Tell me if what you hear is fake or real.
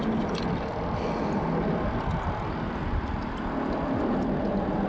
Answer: real